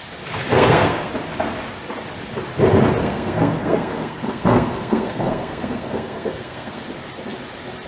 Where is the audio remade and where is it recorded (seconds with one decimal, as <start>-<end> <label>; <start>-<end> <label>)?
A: 0.0-0.5 recorded; 0.5-1.1 remade; 1.1-3.0 recorded; 3.0-6.8 remade; 6.8-7.9 recorded